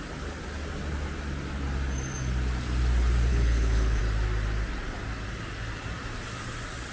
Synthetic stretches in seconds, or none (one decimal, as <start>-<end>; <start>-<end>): 3.3-4.0